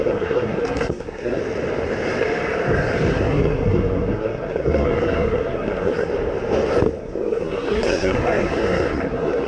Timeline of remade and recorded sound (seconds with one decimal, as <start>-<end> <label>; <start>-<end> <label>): 0.0-1.4 remade; 1.4-3.1 recorded; 3.1-6.1 remade; 6.1-7.0 recorded; 7.0-9.5 remade